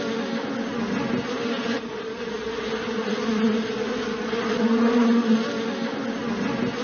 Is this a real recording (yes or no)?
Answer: yes